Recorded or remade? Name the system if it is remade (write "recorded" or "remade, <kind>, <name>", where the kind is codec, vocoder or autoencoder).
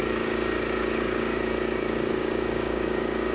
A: remade, codec, DAC